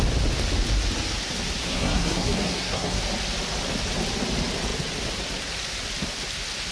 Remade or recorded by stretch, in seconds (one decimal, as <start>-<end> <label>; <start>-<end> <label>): 0.0-1.6 recorded; 1.6-3.0 remade; 3.0-6.7 recorded